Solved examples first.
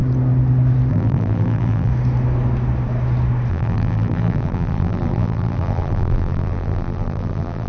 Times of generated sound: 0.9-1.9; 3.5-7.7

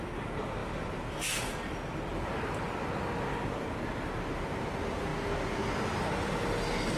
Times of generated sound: none

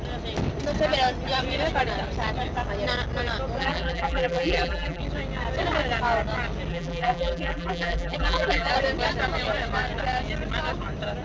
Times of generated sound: 3.6-5.0; 6.7-8.7

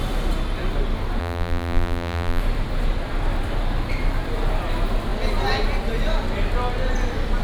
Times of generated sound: 1.2-2.4

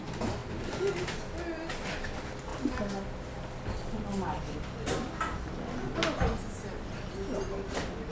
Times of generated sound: 0.4-0.9

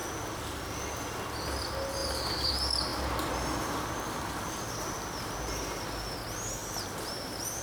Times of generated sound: 2.0-2.5; 2.9-5.7; 6.6-7.6